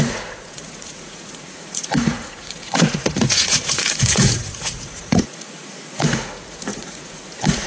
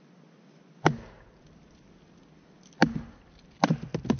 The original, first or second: second